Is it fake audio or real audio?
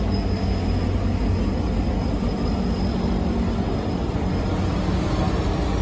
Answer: real